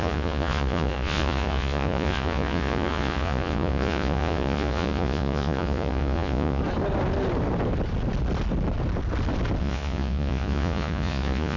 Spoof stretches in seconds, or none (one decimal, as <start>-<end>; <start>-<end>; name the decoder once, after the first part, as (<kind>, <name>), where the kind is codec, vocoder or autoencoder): 0.0-6.6 (vocoder, Vocos); 9.6-11.6